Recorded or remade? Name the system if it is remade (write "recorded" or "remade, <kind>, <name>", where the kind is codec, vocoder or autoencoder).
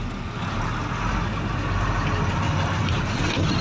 recorded